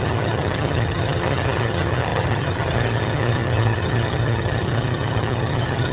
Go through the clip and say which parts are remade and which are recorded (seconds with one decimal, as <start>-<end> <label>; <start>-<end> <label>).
0.0-5.9 remade